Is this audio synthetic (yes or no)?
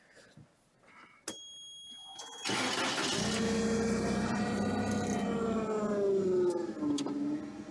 no